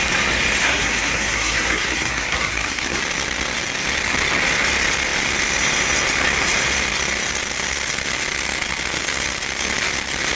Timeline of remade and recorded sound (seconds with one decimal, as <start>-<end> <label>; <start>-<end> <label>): 0.0-0.6 recorded; 0.6-3.0 remade; 3.0-10.4 recorded